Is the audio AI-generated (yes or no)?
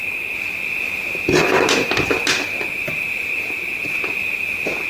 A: no